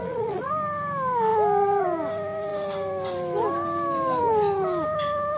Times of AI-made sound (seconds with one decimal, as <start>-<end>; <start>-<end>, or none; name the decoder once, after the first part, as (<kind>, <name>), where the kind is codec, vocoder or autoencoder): 0.0-0.5 (vocoder, Vocos)